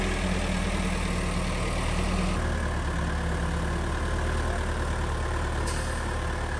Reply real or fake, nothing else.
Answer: real